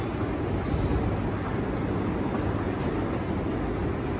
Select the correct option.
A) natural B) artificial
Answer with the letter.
A